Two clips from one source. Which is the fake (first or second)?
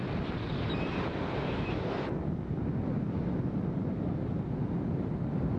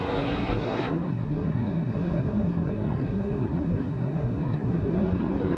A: second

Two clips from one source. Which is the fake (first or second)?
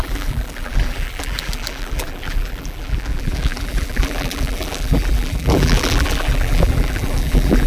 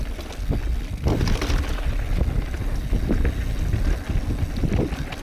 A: first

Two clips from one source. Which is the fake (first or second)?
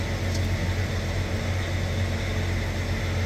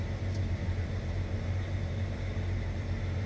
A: second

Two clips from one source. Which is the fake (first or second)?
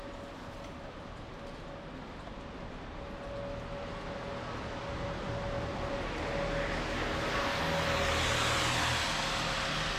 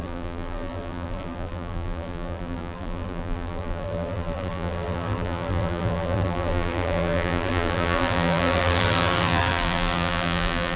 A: second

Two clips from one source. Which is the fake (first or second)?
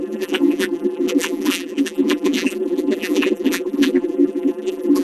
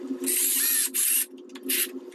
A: first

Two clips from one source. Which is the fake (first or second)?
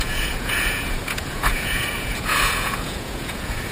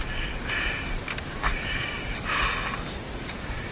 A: first